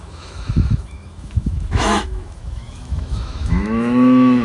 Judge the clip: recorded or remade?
remade